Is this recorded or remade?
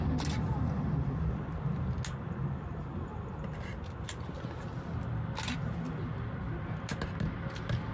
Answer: recorded